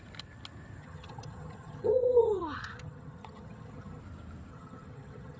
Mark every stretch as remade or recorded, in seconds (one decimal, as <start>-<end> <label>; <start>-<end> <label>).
0.0-0.8 recorded; 0.8-4.0 remade; 4.0-4.5 recorded; 4.5-5.4 remade